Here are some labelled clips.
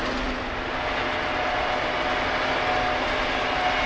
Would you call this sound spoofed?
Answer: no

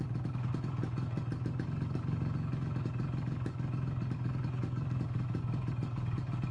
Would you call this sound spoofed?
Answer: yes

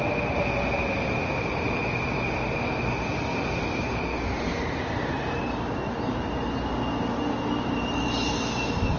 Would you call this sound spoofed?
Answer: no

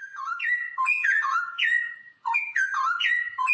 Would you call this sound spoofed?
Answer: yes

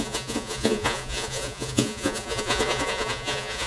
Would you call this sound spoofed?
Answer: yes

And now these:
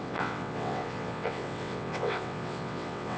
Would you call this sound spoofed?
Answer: yes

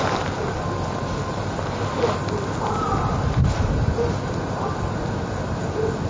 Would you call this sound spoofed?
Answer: no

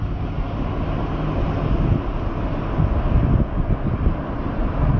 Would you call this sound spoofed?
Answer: no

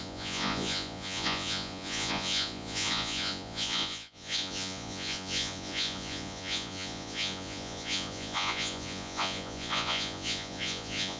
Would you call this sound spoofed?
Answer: yes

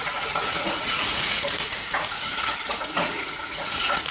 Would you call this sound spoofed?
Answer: yes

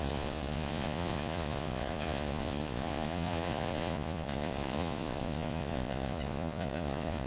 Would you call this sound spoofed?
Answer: yes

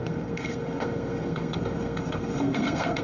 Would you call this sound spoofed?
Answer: yes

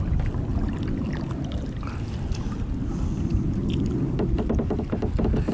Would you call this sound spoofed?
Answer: no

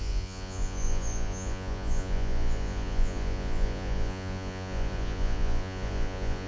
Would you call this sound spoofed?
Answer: yes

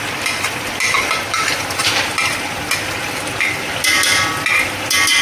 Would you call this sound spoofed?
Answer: no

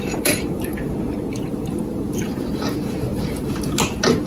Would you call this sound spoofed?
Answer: yes